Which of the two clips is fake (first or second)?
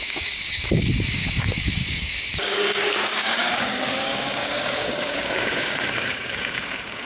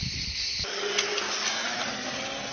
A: first